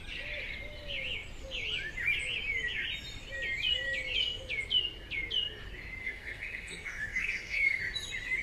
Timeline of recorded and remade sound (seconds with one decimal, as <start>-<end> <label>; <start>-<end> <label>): 0.0-6.0 recorded; 6.0-7.8 remade; 7.8-8.4 recorded